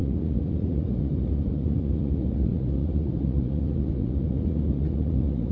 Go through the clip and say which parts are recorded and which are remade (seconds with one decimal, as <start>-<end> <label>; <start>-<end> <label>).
0.0-5.5 remade